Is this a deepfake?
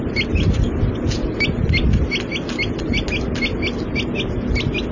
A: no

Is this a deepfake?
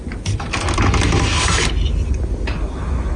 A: no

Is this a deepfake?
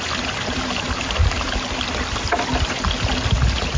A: no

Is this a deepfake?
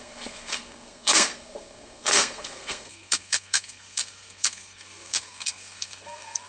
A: yes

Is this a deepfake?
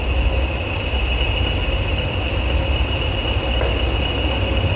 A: no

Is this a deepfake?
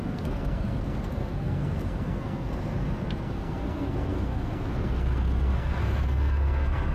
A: yes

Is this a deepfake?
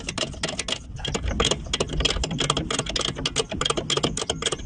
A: no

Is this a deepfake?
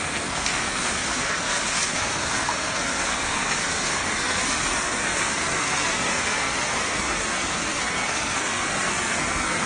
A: yes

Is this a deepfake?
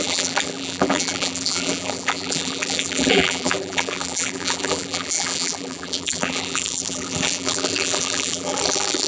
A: yes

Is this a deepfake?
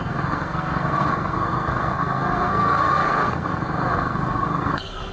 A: yes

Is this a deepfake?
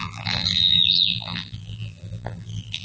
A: yes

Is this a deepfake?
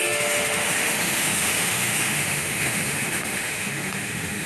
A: yes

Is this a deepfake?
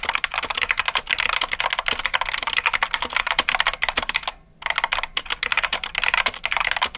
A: no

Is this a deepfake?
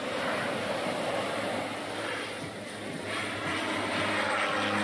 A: no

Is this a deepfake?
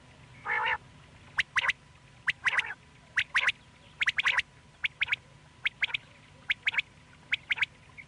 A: no